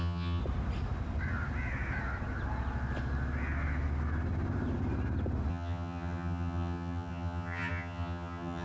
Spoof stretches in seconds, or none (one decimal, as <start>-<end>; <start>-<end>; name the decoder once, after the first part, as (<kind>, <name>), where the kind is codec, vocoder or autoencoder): 0.0-0.4 (vocoder, HiFi-GAN); 5.5-8.6